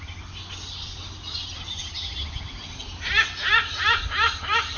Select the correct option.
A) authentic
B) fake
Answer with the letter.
A